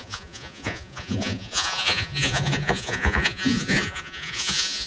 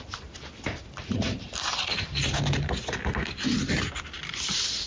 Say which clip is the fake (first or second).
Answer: first